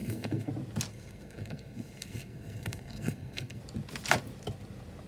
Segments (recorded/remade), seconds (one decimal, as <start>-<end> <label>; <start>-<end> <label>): 0.0-0.5 remade; 0.5-0.9 recorded; 0.9-3.6 remade; 3.6-5.1 recorded